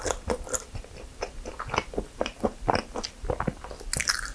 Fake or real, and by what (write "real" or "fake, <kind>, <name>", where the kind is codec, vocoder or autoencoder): real